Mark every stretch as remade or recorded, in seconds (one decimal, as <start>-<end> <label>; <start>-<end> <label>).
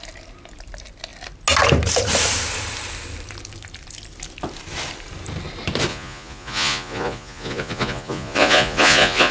0.0-5.9 recorded; 5.9-9.3 remade